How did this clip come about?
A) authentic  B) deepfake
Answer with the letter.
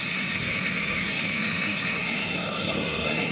B